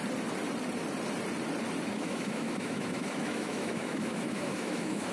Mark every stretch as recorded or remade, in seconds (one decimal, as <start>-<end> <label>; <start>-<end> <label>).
0.0-1.9 recorded; 1.9-5.1 remade